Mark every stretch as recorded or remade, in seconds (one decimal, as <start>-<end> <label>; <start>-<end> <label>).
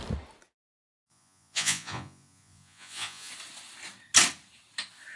0.0-0.7 recorded; 0.7-3.3 remade; 3.3-5.2 recorded